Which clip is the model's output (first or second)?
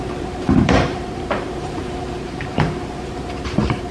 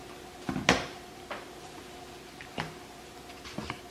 first